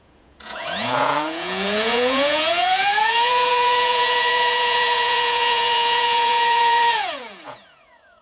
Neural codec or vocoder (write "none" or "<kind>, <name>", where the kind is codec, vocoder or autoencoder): vocoder, Vocos